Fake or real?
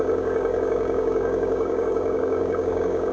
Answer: fake